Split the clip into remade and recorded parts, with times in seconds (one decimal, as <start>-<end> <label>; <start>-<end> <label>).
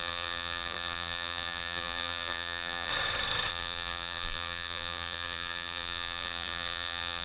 0.0-2.9 remade; 2.9-3.5 recorded; 3.5-7.2 remade